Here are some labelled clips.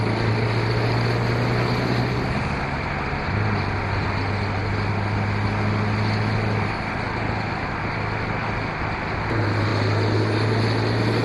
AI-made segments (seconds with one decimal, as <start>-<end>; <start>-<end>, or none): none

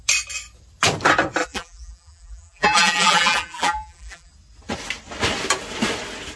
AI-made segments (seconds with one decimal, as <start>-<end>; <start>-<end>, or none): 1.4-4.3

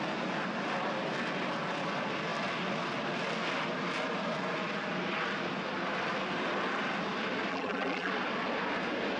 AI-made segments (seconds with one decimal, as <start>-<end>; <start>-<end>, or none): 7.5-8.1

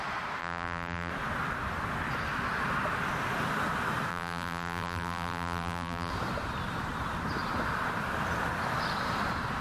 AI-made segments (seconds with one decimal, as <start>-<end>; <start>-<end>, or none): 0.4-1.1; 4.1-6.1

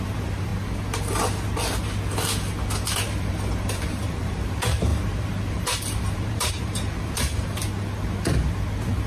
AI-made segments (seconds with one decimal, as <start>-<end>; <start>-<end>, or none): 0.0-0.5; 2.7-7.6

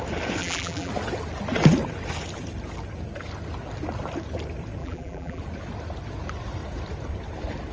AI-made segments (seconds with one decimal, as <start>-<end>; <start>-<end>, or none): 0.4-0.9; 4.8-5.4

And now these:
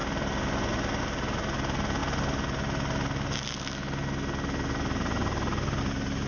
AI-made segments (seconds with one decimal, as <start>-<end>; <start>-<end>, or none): none